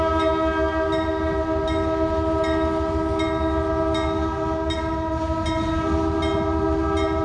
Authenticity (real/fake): real